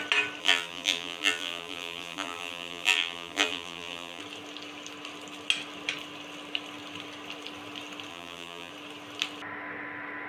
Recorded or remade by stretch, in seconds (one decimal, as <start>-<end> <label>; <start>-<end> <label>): 0.0-0.4 recorded; 0.4-4.2 remade; 4.2-8.1 recorded; 8.1-8.7 remade; 8.7-10.3 recorded

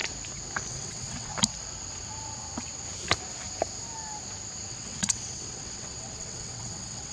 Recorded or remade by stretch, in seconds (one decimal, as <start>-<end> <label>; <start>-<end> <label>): 0.0-0.7 recorded; 0.7-1.3 remade; 1.3-4.7 recorded; 4.7-7.1 remade

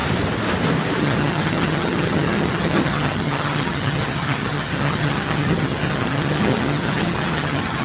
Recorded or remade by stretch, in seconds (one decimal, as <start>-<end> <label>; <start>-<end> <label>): 0.0-1.0 recorded; 1.0-7.8 remade